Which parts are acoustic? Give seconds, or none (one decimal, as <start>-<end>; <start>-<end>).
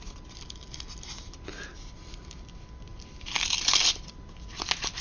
0.0-5.0